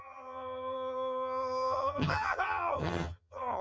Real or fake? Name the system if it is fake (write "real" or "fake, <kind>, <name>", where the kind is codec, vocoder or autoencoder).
fake, vocoder, HiFi-GAN